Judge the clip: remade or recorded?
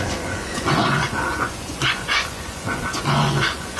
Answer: remade